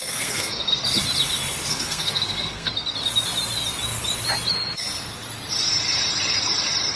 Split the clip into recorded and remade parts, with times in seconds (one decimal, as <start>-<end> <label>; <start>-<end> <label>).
0.0-0.8 remade; 0.8-1.7 recorded; 1.7-2.7 remade; 2.7-7.0 recorded